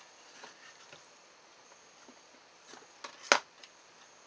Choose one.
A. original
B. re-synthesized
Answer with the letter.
A